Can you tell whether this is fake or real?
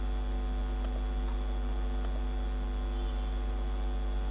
real